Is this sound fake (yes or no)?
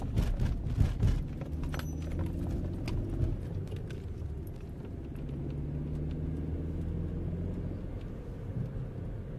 no